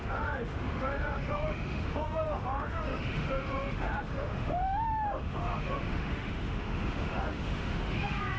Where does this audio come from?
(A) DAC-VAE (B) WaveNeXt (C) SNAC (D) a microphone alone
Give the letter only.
A